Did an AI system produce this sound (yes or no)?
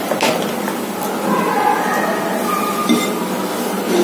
no